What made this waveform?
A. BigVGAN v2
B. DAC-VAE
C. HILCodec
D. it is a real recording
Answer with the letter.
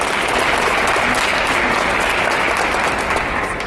D